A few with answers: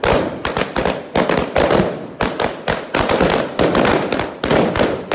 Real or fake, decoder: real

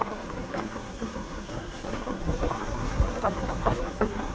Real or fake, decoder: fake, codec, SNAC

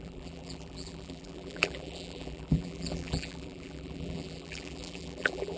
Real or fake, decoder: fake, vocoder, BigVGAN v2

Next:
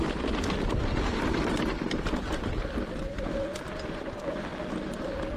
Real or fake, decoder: real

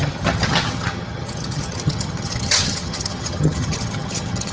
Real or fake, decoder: fake, vocoder, HiFi-GAN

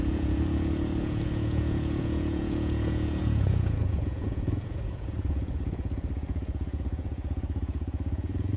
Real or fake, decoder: fake, vocoder, Vocos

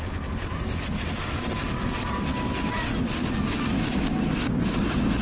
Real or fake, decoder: real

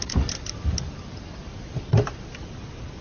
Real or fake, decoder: fake, vocoder, BigVGAN v2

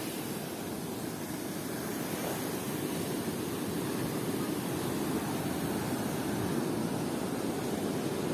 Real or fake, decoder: real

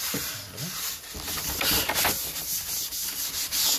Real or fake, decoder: real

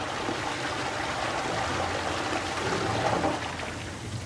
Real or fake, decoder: real